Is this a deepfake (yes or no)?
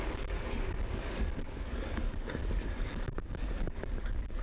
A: yes